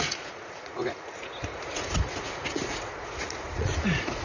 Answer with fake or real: fake